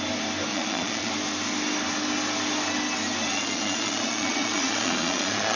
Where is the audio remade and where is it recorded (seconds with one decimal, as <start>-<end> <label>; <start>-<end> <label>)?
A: 0.0-0.5 recorded; 0.5-1.1 remade; 1.1-3.3 recorded; 3.3-5.6 remade